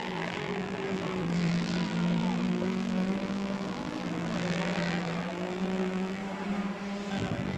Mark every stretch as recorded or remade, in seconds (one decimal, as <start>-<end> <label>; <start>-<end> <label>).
0.0-6.2 remade; 6.2-7.1 recorded; 7.1-7.6 remade